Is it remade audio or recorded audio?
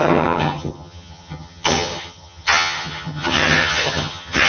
remade